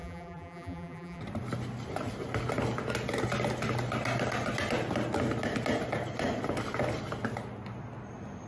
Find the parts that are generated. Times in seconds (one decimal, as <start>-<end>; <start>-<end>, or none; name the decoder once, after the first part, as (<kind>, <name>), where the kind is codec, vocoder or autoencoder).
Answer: 0.0-1.2 (vocoder, BigVGAN v2)